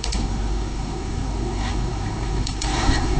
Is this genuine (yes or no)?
no